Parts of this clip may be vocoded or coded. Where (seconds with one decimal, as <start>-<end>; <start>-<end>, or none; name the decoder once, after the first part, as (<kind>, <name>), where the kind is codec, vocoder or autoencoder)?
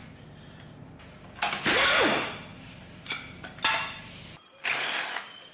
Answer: none